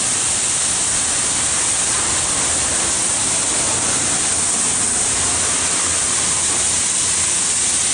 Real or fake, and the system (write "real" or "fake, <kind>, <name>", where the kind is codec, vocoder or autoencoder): real